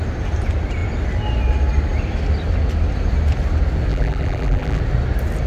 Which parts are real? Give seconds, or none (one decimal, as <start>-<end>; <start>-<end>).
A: 0.0-3.9; 4.8-5.5

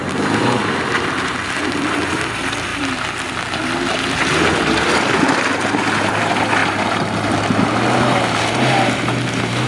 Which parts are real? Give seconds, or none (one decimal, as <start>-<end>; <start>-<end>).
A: 0.0-9.7

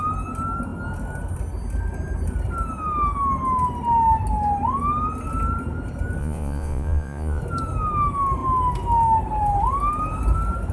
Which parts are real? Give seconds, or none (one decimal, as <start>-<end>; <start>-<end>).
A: 0.0-6.2; 7.4-10.7